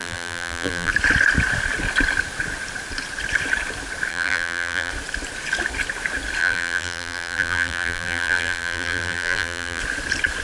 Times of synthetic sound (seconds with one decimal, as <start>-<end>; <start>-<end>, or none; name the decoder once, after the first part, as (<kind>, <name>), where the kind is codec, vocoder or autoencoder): 0.0-0.9 (vocoder, BigVGAN v2); 4.1-4.9; 6.4-9.8